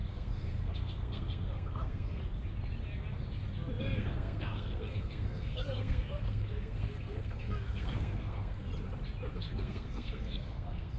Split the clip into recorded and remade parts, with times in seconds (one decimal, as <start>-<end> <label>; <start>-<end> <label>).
0.0-2.2 remade; 2.2-3.8 recorded; 3.8-8.7 remade; 8.7-9.3 recorded; 9.3-11.0 remade